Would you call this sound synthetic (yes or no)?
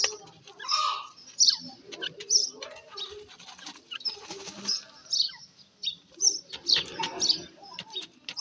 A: no